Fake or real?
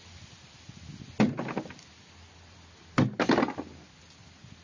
real